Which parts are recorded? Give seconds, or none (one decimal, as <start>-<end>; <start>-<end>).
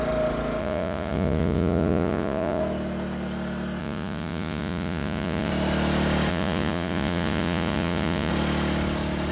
0.0-0.6; 2.6-3.8; 5.5-6.3; 8.3-9.3